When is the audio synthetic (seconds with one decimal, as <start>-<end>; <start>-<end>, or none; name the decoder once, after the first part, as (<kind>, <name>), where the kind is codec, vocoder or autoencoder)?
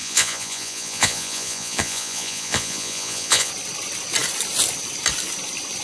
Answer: 0.0-3.5 (vocoder, Vocos)